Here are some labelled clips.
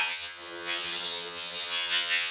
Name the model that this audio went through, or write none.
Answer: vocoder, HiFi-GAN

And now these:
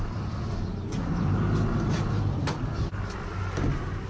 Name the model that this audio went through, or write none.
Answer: none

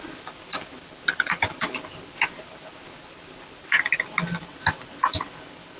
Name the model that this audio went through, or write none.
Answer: none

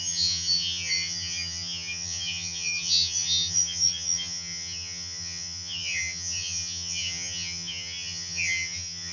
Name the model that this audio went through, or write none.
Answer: vocoder, HiFi-GAN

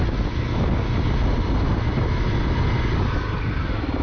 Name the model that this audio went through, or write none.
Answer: none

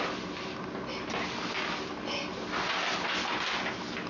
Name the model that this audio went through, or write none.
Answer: none